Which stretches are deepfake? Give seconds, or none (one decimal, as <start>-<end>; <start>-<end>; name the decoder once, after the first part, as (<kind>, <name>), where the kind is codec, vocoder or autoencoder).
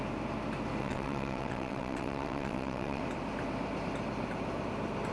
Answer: 0.8-3.0 (vocoder, WaveNeXt)